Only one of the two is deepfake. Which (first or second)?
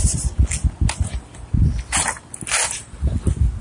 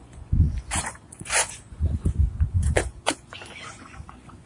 second